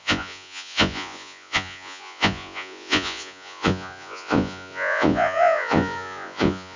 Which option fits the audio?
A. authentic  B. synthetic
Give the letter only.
B